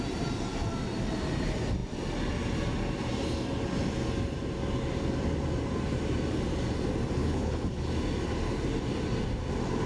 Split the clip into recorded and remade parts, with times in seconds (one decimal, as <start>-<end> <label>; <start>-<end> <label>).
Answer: 0.0-7.2 recorded; 7.2-7.9 remade; 7.9-9.9 recorded